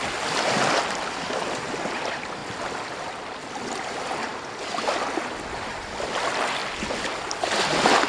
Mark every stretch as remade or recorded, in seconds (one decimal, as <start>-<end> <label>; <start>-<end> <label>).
0.0-8.1 recorded